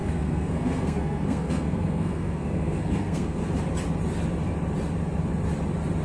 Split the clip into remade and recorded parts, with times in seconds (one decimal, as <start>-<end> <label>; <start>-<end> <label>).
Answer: 0.0-3.4 remade; 3.4-6.0 recorded